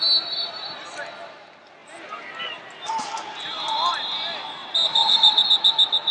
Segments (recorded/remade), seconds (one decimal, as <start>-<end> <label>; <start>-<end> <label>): 0.0-4.6 recorded; 4.6-5.4 remade; 5.4-6.1 recorded